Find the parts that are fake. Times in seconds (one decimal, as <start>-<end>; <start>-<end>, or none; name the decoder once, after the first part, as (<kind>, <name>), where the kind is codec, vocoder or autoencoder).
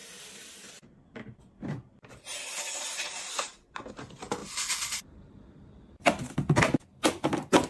4.4-5.7 (vocoder, BigVGAN v2)